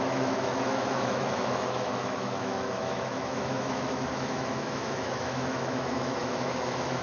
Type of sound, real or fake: fake